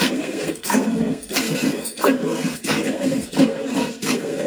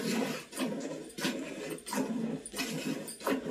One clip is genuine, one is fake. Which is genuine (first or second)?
second